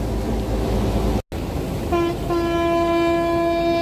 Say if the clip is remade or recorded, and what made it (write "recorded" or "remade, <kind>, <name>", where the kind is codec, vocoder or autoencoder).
recorded